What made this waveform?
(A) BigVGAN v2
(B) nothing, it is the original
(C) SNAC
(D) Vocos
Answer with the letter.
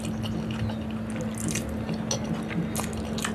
B